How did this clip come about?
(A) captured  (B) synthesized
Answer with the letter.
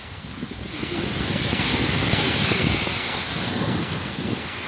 B